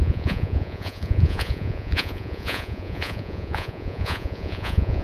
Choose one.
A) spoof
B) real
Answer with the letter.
A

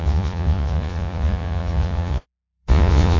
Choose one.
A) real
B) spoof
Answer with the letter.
B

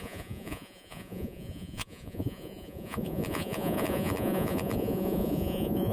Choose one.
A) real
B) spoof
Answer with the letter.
B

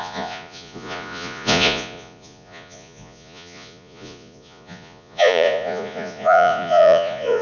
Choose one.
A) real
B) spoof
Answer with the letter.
B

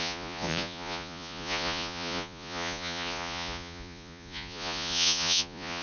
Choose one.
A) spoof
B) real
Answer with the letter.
A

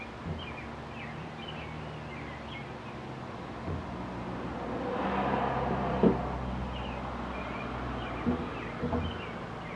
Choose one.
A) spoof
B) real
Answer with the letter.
B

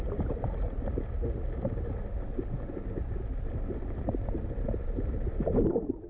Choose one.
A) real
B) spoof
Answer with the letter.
A